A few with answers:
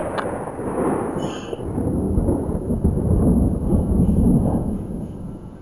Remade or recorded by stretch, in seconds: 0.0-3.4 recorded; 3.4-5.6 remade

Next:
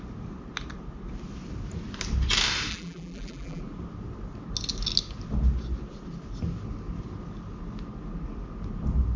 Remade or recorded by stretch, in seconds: 0.0-2.7 recorded; 2.7-3.6 remade; 3.6-9.2 recorded

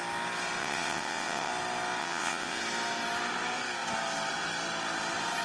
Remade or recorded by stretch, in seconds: 0.0-0.6 recorded; 0.6-1.5 remade; 1.5-2.0 recorded; 2.0-2.6 remade; 2.6-5.4 recorded

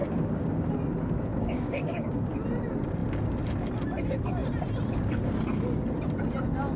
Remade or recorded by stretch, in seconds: 0.0-0.7 remade; 0.7-1.3 recorded; 1.3-2.3 remade; 2.3-6.8 recorded